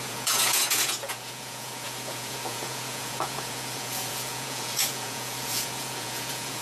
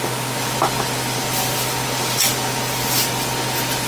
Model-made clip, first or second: first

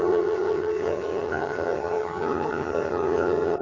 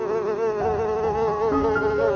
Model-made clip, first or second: first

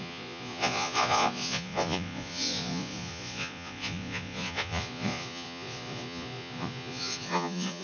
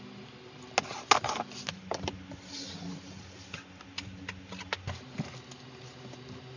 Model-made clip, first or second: first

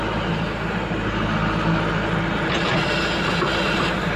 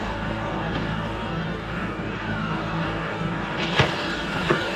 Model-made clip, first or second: second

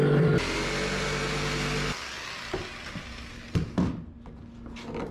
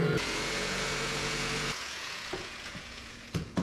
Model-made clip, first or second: second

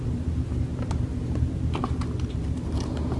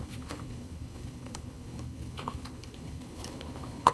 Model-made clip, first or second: second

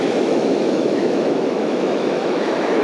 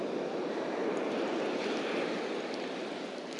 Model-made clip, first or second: first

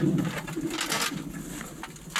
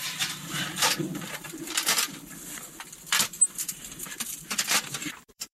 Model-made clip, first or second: second